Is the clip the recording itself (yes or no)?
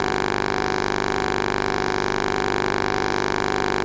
no